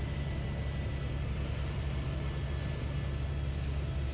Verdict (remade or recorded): recorded